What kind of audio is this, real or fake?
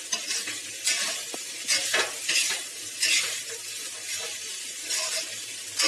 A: real